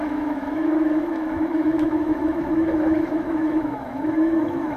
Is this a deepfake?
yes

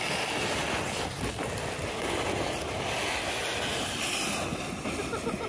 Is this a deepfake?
no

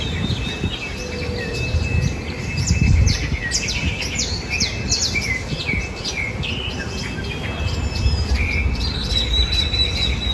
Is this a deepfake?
no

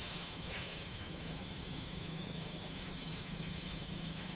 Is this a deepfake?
yes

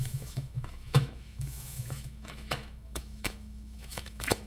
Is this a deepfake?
yes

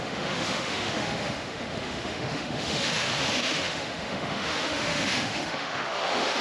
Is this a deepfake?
yes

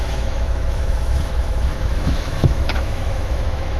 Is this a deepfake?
yes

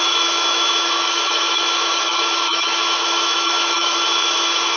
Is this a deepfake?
yes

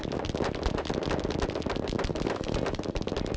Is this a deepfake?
no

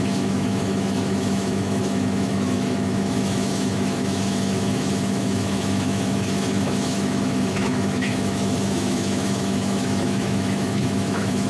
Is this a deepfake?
yes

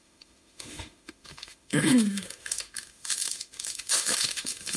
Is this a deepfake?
yes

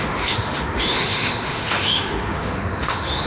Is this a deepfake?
yes